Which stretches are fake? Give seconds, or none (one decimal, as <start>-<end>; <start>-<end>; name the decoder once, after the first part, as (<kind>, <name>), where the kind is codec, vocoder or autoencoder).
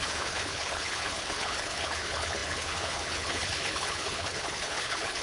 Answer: 0.0-5.2 (codec, HILCodec)